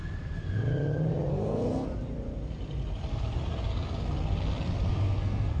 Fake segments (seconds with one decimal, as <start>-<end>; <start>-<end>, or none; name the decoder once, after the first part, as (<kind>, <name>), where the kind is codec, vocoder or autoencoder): 1.3-1.9 (codec, SNAC); 4.9-5.6